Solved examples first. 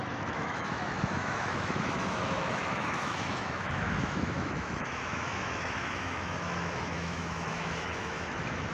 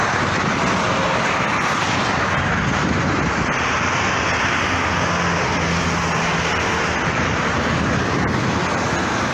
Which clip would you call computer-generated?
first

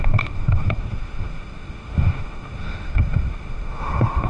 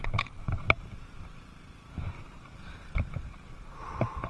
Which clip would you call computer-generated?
first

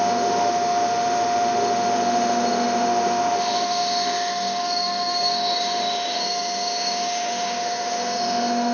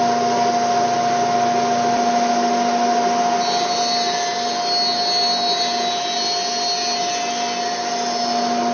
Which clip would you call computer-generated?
first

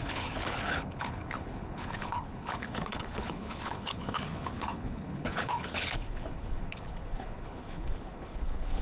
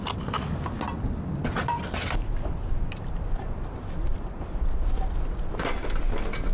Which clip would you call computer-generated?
first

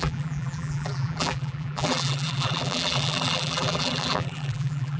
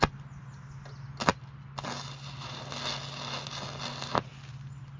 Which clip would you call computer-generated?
first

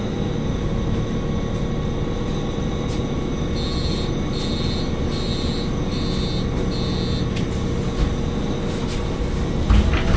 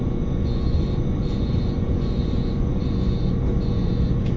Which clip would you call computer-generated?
second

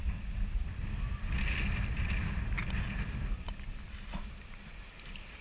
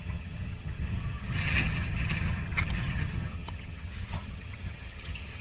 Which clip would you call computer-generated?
second